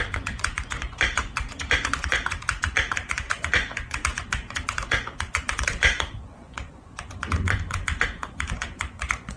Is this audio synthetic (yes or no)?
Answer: yes